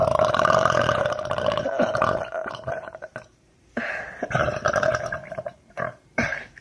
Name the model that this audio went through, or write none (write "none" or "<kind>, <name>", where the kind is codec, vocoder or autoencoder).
vocoder, BigVGAN v2